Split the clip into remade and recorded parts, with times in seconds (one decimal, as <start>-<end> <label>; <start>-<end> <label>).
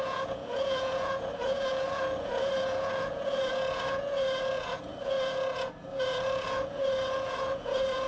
0.0-8.1 remade